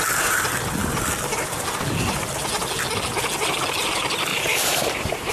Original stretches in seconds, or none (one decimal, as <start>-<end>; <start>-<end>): 0.0-4.3